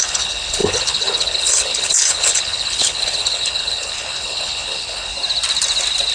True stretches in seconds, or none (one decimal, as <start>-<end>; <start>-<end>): 5.1-6.1